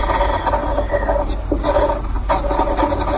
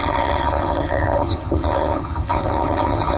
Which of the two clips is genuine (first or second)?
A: first